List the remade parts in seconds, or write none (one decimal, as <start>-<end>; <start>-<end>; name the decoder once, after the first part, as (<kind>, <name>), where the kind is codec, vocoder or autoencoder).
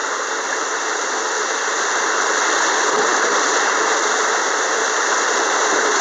none